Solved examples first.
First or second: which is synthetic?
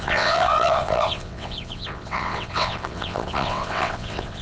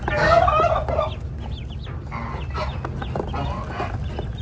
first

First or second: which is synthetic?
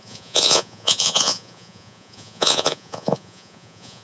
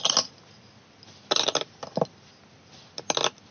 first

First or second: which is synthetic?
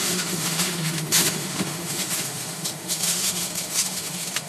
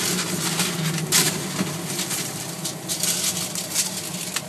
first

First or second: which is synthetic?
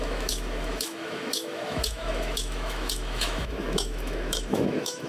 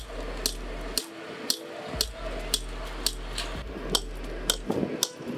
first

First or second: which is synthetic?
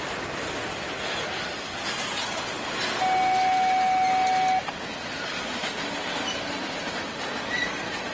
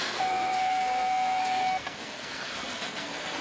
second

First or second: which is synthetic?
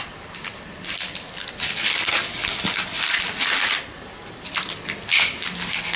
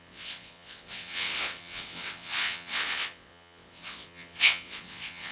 second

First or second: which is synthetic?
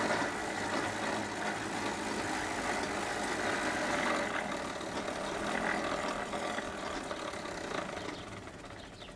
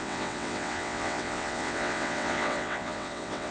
second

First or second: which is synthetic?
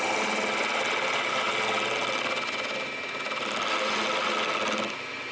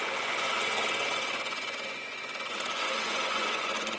second